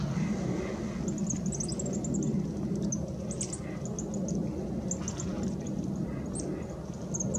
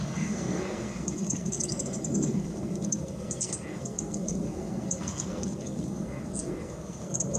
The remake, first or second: second